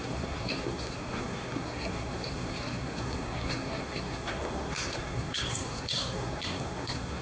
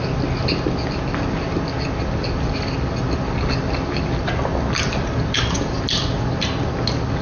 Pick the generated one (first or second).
first